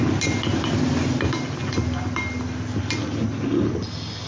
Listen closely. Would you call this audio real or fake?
real